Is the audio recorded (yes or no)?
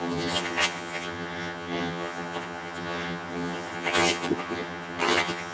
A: no